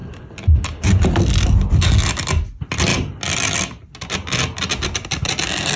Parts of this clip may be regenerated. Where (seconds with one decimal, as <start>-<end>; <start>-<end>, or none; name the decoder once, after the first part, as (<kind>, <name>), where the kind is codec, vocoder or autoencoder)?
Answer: none